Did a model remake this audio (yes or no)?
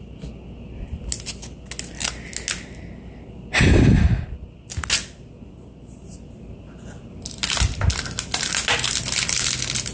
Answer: no